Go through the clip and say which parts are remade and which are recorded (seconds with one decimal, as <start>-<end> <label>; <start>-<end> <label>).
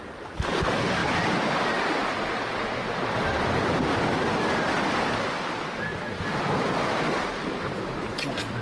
0.0-8.6 recorded